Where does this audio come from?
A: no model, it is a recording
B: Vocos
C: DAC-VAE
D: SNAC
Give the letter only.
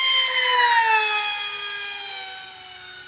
A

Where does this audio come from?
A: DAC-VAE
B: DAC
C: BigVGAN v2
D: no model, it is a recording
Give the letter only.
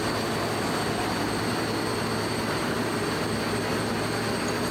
D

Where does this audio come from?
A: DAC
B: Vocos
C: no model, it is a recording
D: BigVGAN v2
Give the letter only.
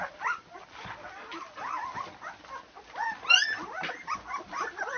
C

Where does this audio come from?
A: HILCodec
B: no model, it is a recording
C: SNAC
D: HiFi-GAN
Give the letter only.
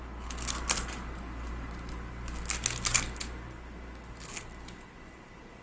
B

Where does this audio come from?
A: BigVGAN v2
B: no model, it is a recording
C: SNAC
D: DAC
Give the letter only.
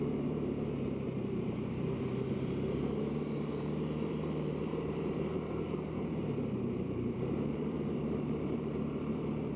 A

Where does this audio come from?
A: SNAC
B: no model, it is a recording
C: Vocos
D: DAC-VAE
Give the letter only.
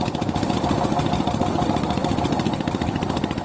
B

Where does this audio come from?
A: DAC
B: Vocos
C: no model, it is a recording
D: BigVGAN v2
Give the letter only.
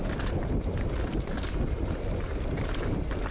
D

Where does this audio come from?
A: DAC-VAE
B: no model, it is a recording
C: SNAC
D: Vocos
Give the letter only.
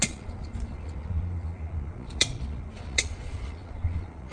D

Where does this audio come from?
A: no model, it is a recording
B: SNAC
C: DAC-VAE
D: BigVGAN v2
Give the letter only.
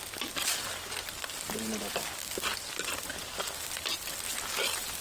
A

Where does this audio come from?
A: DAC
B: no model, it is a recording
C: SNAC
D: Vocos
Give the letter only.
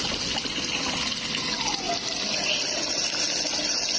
B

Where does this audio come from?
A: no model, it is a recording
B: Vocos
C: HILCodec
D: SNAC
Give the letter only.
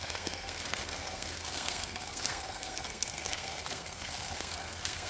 D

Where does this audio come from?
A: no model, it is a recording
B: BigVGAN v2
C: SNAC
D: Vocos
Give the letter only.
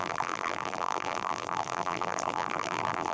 B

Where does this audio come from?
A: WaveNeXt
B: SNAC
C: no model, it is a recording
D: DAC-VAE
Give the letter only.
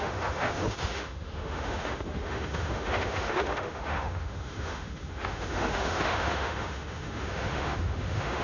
D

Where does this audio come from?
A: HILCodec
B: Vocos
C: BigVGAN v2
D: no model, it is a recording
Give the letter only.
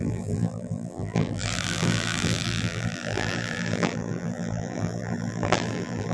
C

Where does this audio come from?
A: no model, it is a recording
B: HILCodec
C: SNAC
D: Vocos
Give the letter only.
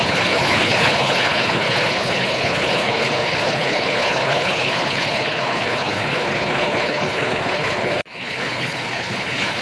B